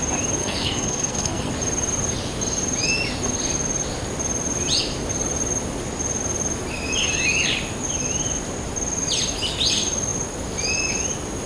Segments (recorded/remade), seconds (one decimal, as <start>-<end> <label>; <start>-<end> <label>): 0.0-0.4 recorded; 0.4-1.5 remade; 1.5-11.5 recorded